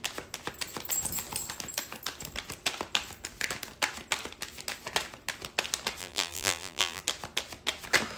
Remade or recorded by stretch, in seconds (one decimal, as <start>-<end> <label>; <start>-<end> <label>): 0.0-6.0 recorded; 6.0-7.0 remade; 7.0-8.2 recorded